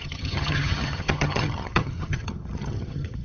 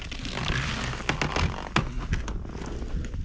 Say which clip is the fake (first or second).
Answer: first